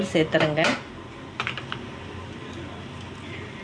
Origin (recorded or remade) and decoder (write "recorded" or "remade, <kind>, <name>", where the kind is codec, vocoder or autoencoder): recorded